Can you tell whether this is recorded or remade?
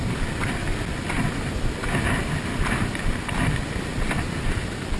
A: recorded